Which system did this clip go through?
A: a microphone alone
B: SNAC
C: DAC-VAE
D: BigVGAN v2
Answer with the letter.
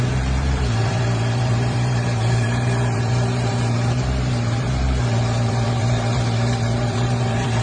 D